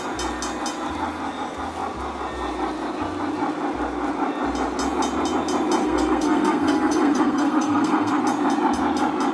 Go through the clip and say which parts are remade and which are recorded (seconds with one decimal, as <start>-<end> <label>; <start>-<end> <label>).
0.0-5.8 recorded; 5.8-8.2 remade; 8.2-9.3 recorded